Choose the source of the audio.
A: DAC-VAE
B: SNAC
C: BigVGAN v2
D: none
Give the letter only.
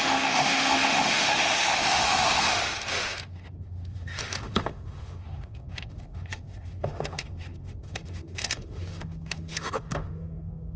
A